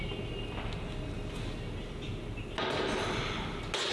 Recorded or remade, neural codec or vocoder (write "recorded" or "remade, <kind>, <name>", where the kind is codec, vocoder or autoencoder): recorded